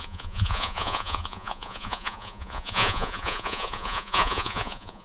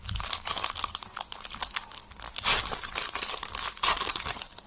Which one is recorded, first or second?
second